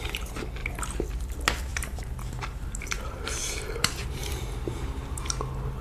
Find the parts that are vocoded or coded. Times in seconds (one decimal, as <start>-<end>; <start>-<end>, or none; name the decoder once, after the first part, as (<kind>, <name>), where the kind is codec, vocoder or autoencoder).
1.7-5.2 (vocoder, BigVGAN v2)

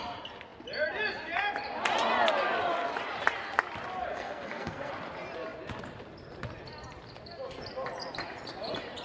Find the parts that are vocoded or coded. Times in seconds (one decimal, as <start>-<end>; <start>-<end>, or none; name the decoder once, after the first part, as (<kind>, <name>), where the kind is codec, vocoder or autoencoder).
4.1-4.9 (codec, SNAC)